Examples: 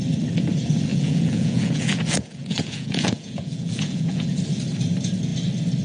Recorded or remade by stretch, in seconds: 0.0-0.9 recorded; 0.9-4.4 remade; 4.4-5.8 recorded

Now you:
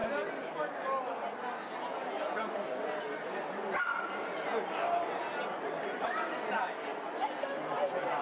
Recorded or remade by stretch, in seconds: 0.0-8.2 recorded

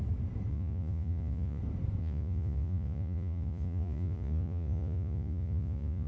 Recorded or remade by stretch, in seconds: 0.0-0.5 recorded; 0.5-1.6 remade; 1.6-2.0 recorded; 2.0-6.1 remade

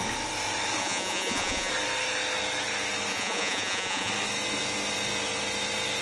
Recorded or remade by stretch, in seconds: 0.0-0.8 recorded; 0.8-1.7 remade; 1.7-3.1 recorded; 3.1-4.1 remade; 4.1-6.0 recorded

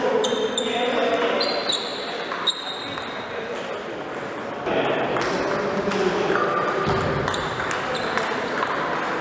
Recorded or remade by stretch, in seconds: 0.0-9.2 recorded